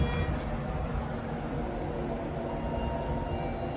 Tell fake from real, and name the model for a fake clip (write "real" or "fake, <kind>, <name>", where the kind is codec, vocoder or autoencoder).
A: real